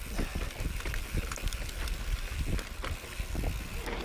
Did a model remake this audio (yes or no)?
no